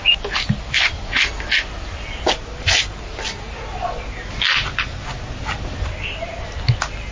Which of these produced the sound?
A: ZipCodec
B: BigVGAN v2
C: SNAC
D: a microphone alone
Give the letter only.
D